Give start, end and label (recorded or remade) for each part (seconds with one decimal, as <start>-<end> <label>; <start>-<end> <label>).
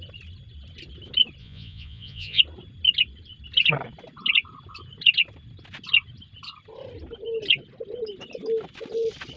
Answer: 0.0-1.4 recorded; 1.4-2.4 remade; 2.4-9.4 recorded